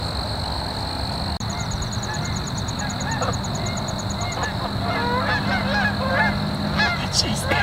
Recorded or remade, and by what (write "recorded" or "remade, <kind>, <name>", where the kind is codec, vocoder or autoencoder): recorded